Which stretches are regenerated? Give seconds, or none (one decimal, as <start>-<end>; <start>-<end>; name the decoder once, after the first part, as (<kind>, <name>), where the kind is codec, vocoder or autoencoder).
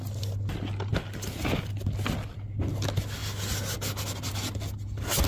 none